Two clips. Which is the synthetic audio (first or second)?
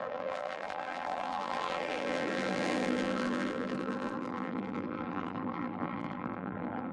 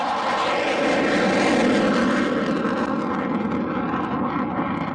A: first